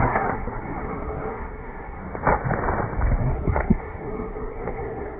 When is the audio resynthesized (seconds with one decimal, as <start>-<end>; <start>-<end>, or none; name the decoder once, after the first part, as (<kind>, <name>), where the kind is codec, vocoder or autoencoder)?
0.0-2.0 (codec, SNAC); 3.2-5.2